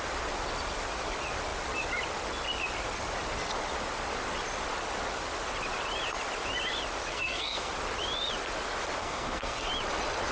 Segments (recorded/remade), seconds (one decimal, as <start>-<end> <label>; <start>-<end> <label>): 0.0-7.1 recorded; 7.1-7.7 remade; 7.7-9.0 recorded; 9.0-9.7 remade; 9.7-10.3 recorded

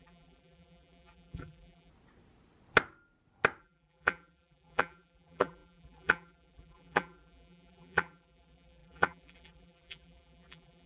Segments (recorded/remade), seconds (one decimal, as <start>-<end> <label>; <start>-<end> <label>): 0.0-1.9 remade; 1.9-3.6 recorded; 3.6-10.9 remade

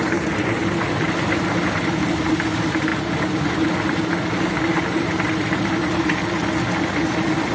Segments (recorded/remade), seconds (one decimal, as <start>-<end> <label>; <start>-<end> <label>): 0.0-4.7 recorded; 4.7-6.2 remade; 6.2-7.5 recorded

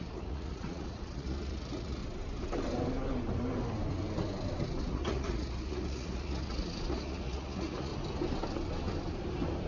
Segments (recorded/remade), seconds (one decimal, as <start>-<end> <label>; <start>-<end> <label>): 0.0-2.0 remade; 2.0-4.8 recorded; 4.8-7.9 remade; 7.9-9.7 recorded

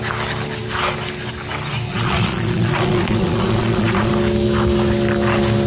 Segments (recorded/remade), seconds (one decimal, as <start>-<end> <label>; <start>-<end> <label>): 0.0-1.9 recorded; 1.9-4.1 remade; 4.1-5.7 recorded

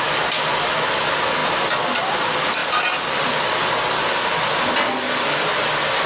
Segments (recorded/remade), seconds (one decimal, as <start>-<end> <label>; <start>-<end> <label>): 0.0-6.1 recorded